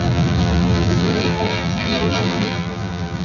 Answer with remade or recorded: remade